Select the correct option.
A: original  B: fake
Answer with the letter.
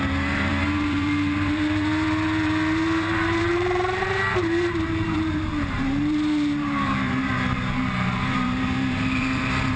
B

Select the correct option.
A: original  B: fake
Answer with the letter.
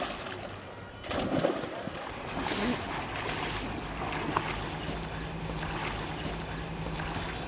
A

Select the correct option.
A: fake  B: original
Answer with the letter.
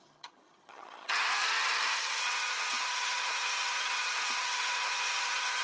A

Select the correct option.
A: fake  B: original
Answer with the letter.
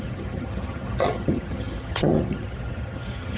A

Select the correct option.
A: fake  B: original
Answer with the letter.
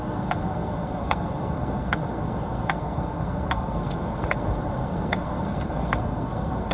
A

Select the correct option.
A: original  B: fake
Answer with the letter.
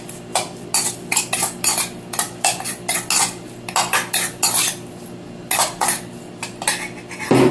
A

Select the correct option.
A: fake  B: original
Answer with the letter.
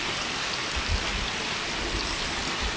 B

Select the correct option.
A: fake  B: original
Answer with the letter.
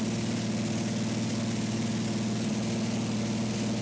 B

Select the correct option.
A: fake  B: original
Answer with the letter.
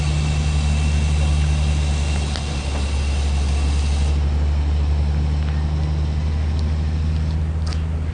A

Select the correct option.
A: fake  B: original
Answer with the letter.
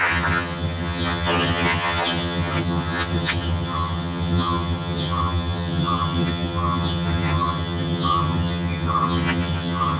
A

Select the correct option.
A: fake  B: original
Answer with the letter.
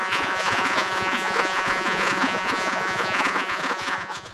A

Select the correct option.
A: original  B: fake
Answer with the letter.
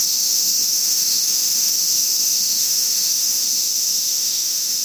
B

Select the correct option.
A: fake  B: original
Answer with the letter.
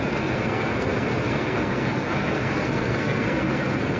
A